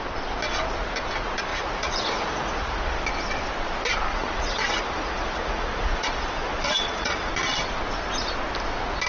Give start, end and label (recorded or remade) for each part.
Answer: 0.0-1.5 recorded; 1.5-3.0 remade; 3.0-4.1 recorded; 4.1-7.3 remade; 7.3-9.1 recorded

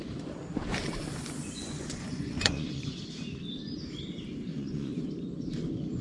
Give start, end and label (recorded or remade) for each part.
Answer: 0.0-1.4 recorded; 1.4-3.0 remade; 3.0-4.5 recorded; 4.5-5.1 remade; 5.1-6.0 recorded